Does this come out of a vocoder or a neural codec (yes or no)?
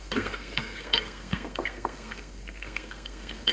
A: yes